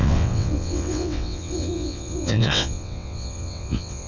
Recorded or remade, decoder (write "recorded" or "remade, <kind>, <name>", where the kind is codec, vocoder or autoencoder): remade, vocoder, WaveNeXt